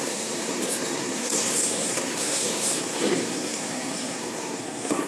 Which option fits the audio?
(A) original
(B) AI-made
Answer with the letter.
B